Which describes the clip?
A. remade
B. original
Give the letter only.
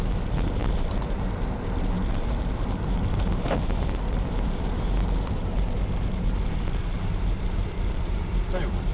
A